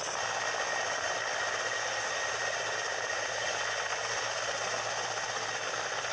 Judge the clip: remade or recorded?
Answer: recorded